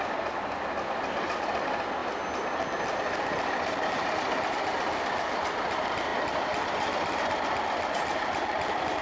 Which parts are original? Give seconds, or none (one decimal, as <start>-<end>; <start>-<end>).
0.0-9.0